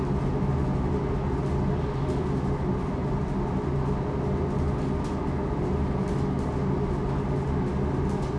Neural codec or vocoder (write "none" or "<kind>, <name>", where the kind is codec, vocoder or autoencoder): none